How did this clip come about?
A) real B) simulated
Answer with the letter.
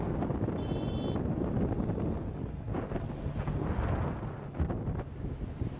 A